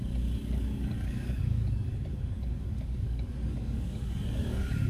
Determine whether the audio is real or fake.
fake